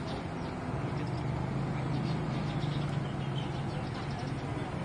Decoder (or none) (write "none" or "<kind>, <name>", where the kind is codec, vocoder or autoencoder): none